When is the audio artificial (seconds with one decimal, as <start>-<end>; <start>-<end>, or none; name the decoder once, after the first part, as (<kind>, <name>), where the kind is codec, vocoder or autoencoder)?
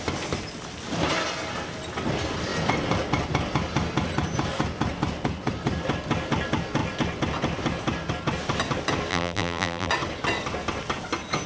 9.1-9.9 (vocoder, BigVGAN v2)